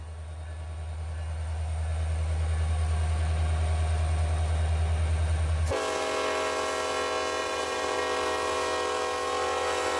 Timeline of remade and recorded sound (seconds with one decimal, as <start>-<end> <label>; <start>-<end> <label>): 0.0-7.4 recorded; 7.4-8.0 remade; 8.0-10.0 recorded